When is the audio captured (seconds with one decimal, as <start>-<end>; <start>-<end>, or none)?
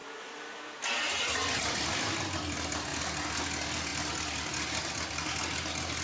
0.0-6.0